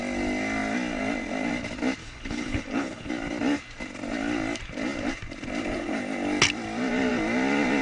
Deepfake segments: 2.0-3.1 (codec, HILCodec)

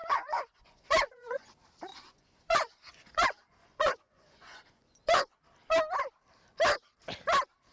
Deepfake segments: 0.0-1.5 (vocoder, Vocos); 1.9-5.4

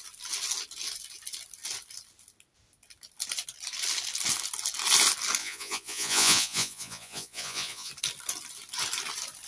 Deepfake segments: 5.4-7.9 (vocoder, Vocos)

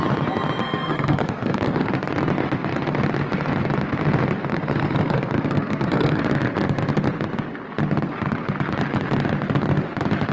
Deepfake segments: 0.6-1.9 (codec, SNAC); 4.5-6.2

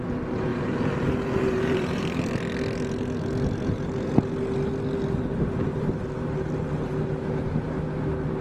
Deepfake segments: 0.5-2.0 (vocoder, BigVGAN v2); 5.3-5.9

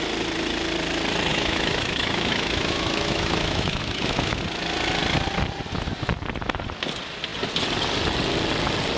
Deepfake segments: 1.3-4.4 (autoencoder, DAC-VAE)